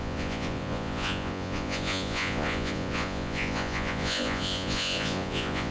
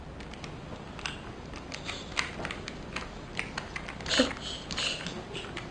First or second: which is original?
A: second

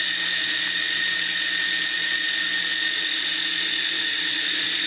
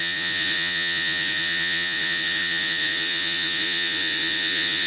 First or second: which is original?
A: first